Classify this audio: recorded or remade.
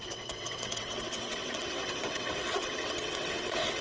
remade